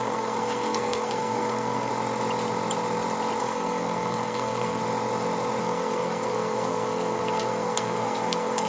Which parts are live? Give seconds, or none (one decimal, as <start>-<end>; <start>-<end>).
1.9-3.4; 4.8-5.6

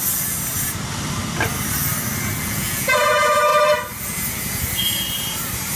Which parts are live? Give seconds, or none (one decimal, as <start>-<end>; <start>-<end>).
0.0-2.4; 3.5-5.8

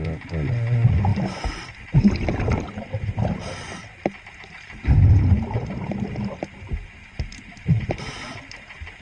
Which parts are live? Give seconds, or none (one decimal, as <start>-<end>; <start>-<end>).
0.0-7.3; 7.9-9.0

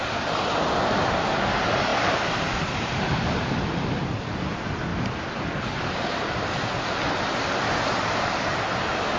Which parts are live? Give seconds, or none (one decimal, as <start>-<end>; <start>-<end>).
0.0-1.9; 4.0-9.2

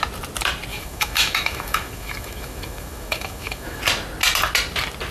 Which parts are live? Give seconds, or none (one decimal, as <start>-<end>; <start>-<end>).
0.0-0.7; 3.8-5.1

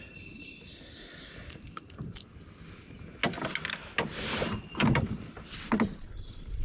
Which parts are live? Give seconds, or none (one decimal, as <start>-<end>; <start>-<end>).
0.0-4.6; 5.7-6.6

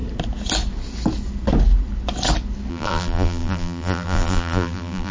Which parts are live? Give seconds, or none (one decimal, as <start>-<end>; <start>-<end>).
0.0-2.7